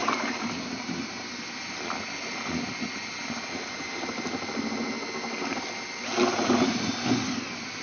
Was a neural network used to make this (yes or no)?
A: no